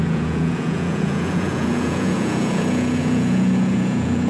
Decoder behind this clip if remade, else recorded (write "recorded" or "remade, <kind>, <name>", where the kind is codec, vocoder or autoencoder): remade, vocoder, Vocos